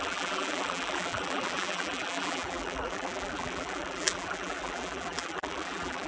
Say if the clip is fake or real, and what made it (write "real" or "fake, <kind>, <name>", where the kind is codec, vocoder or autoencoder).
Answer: fake, vocoder, BigVGAN v2